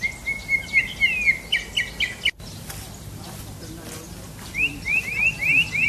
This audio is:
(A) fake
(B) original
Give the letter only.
B